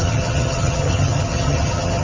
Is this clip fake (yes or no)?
yes